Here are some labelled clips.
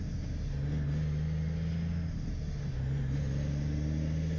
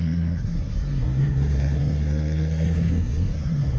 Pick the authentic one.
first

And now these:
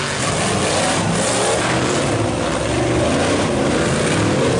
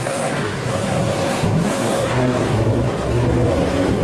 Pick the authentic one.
first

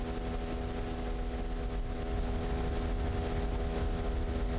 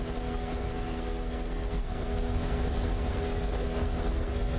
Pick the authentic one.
first